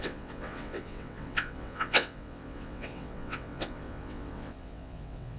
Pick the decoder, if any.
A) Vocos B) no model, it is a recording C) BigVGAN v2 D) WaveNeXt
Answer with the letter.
D